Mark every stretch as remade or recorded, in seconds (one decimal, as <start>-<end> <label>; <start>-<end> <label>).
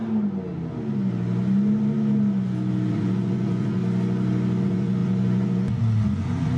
0.0-2.9 recorded; 2.9-3.8 remade; 3.8-4.6 recorded; 4.6-6.6 remade